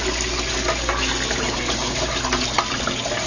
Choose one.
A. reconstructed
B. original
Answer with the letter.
B